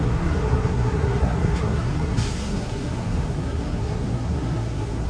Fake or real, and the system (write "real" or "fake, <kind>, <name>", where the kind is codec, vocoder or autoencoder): fake, codec, SNAC